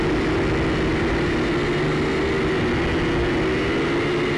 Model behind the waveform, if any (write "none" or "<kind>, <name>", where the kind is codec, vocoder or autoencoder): none